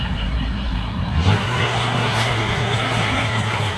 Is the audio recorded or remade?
remade